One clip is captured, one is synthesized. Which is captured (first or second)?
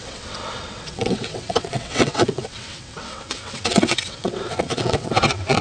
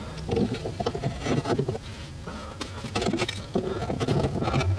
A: second